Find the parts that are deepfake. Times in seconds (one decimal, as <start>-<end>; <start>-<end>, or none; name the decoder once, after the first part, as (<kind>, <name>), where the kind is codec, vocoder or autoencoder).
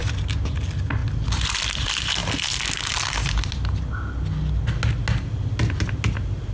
none